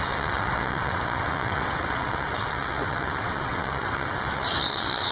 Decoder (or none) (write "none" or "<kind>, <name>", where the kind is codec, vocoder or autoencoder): vocoder, WaveNeXt